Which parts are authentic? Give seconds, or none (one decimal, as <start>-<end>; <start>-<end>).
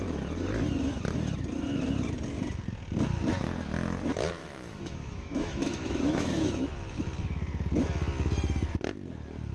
0.0-4.4; 7.0-9.5